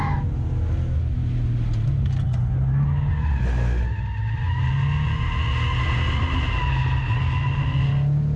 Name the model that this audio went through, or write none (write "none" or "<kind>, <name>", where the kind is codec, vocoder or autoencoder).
none